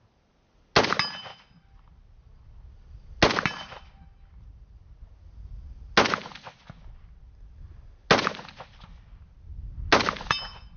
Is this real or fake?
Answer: real